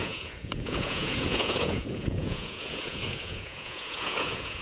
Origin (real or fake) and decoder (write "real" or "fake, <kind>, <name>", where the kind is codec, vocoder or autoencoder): fake, vocoder, Vocos